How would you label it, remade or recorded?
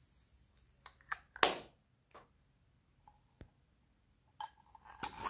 recorded